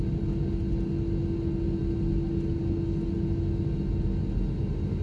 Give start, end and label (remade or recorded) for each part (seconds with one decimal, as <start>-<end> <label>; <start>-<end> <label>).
0.0-5.0 recorded